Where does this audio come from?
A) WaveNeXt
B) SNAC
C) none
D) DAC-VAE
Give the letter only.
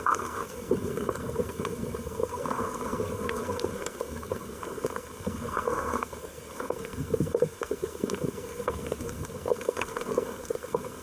B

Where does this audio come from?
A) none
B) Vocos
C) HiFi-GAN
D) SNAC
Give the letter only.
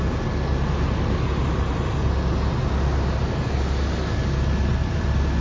A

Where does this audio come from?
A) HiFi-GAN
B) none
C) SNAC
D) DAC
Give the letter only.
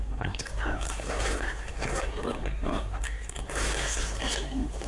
C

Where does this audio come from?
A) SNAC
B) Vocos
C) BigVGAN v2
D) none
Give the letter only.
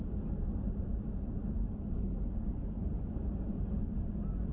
D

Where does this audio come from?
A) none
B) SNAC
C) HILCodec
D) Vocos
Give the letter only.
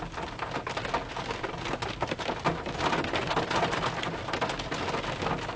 A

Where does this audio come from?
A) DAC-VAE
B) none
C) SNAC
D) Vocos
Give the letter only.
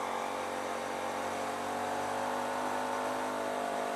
B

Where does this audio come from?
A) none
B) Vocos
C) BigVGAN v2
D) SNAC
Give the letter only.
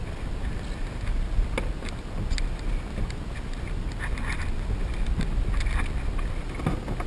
A